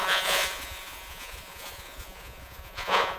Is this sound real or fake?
fake